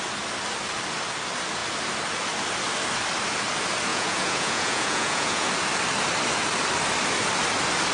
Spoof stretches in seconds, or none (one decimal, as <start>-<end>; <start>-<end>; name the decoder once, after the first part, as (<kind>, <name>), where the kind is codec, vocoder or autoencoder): 3.9-5.5 (vocoder, Vocos)